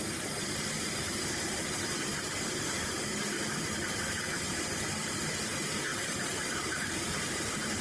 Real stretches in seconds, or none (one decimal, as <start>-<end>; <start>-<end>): 0.0-0.4; 1.0-2.1; 3.7-5.9; 6.9-7.8